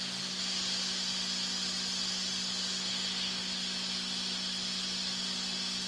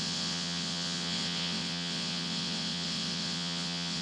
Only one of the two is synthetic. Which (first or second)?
second